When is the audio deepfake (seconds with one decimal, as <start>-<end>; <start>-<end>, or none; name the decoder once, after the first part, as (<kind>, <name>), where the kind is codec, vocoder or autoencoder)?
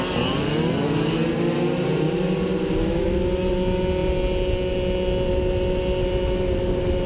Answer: none